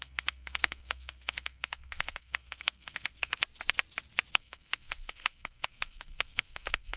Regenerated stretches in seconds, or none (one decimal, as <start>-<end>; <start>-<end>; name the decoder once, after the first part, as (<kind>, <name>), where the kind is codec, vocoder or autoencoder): 0.0-3.4 (codec, SNAC); 4.3-7.0